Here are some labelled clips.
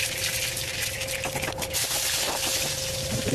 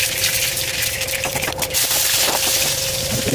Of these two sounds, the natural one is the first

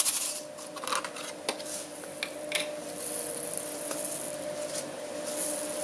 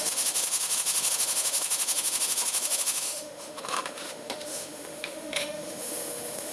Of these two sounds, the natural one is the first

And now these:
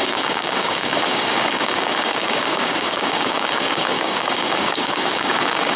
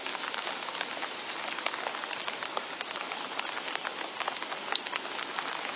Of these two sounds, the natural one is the second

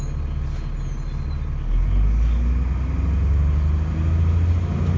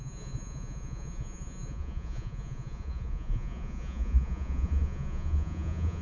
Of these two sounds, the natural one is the first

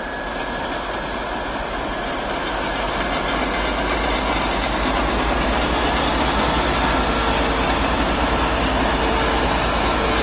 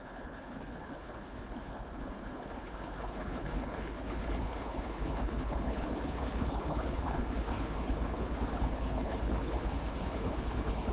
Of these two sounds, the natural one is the first